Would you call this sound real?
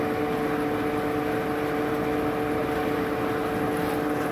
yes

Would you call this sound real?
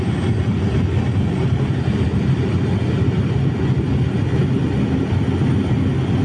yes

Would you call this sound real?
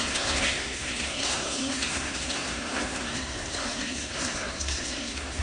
no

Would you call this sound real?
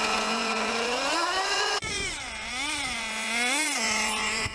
no